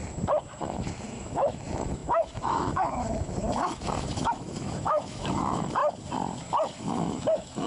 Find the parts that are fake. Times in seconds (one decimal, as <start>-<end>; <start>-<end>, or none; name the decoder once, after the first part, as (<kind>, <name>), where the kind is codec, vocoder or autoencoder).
0.6-5.8 (autoencoder, DAC-VAE); 6.8-7.7